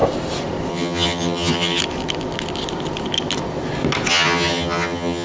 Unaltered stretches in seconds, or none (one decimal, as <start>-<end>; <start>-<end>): 0.0-0.7; 1.8-4.1